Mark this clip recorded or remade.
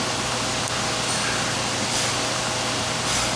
recorded